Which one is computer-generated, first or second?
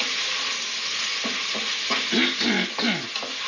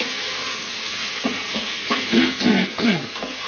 second